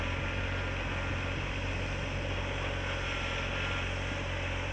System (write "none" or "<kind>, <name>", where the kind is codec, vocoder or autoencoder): none